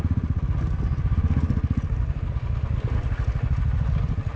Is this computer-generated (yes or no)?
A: no